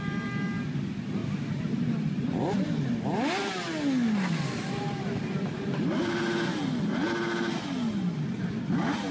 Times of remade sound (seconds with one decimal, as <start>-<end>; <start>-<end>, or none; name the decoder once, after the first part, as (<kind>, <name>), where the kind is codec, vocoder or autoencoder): none